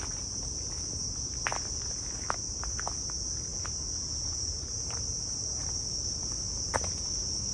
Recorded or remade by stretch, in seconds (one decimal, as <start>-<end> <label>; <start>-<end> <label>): 0.0-7.5 recorded